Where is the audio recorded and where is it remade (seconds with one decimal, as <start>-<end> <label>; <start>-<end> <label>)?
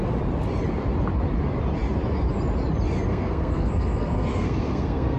0.0-3.1 recorded; 3.1-5.2 remade